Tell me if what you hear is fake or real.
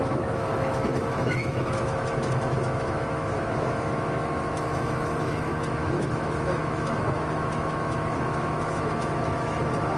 fake